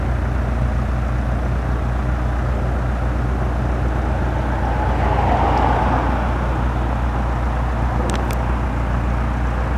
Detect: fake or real real